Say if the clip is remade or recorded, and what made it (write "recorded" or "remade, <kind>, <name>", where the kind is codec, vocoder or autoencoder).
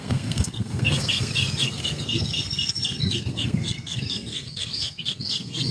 remade, codec, SNAC